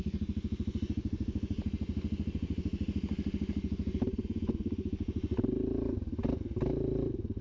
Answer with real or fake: real